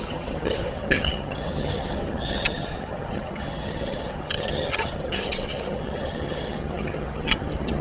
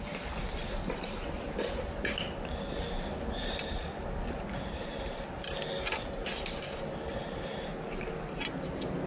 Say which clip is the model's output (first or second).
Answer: first